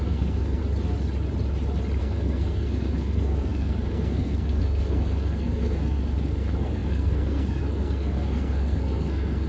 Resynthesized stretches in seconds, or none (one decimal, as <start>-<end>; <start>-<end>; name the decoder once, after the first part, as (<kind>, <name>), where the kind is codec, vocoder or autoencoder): 0.0-0.6 (codec, SNAC); 2.0-9.5